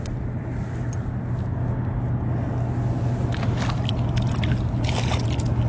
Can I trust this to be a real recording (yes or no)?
yes